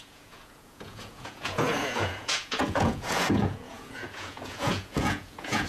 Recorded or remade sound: remade